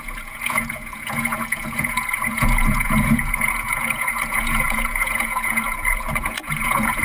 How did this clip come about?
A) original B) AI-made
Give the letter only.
B